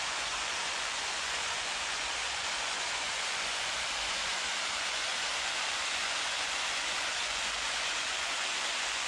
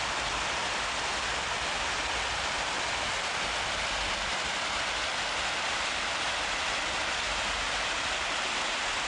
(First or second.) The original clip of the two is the second